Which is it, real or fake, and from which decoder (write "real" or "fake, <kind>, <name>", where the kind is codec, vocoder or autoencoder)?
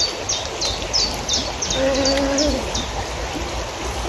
real